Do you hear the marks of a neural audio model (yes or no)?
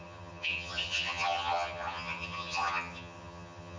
yes